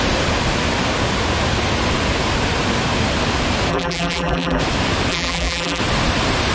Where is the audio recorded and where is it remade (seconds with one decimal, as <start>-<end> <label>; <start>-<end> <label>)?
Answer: 0.0-3.7 recorded; 3.7-4.6 remade; 4.6-5.1 recorded; 5.1-5.8 remade; 5.8-6.5 recorded